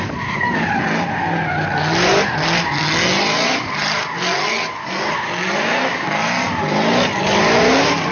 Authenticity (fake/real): real